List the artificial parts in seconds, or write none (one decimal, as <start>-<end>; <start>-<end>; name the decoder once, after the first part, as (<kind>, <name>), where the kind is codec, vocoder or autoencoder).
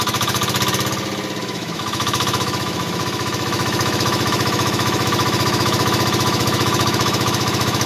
0.0-0.4 (autoencoder, DAC-VAE); 1.4-7.9